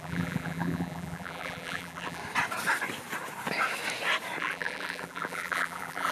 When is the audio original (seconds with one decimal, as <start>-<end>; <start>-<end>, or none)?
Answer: 2.2-4.4